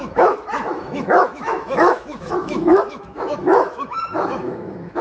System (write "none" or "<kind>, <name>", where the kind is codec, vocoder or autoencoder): autoencoder, DAC-VAE